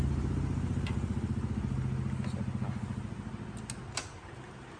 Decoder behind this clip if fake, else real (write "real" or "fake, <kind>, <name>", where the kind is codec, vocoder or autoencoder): real